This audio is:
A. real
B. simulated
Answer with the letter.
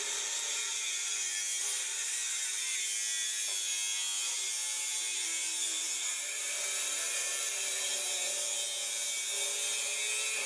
A